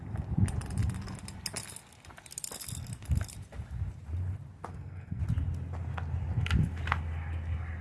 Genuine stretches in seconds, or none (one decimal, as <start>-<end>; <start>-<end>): 0.0-4.7; 5.2-7.8